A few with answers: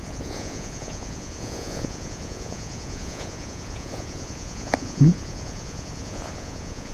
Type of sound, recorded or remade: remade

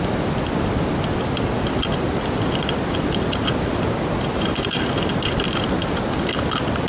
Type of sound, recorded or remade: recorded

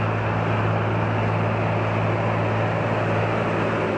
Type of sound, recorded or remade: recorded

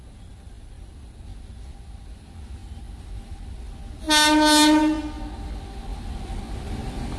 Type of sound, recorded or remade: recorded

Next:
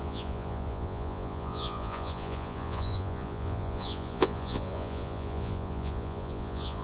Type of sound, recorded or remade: remade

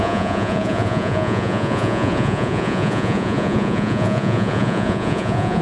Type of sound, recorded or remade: remade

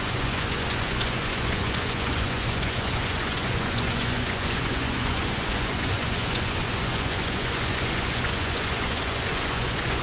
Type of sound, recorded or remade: remade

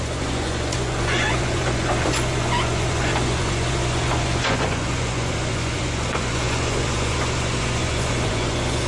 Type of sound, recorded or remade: remade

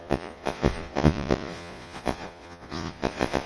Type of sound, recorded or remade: remade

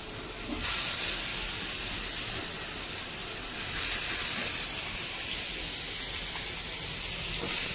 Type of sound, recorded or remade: recorded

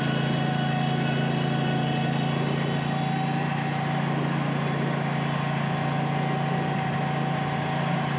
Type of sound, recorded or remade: recorded